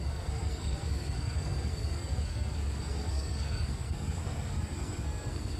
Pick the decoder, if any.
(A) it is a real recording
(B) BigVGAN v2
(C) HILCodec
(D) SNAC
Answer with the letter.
D